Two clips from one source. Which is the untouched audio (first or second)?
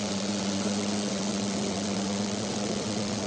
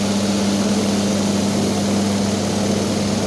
second